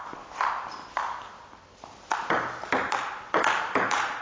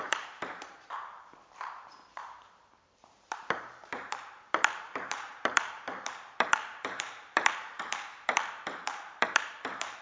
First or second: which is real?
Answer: first